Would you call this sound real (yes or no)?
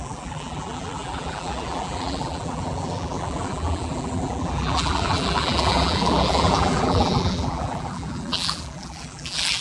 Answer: no